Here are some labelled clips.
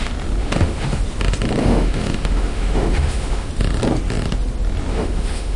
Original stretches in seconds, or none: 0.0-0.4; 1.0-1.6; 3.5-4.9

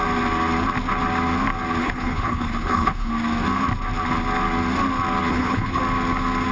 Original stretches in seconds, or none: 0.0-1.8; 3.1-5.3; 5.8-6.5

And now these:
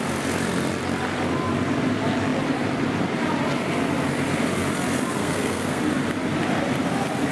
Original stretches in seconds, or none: 0.0-5.2; 5.8-7.3

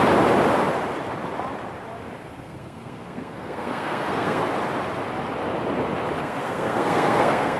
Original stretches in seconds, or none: 0.0-2.2; 4.4-6.2

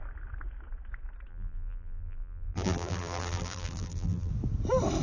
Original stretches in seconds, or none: 0.0-1.3; 4.3-5.0

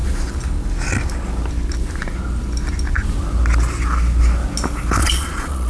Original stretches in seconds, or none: 0.0-5.0

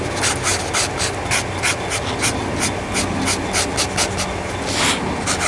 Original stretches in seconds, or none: 0.0-5.5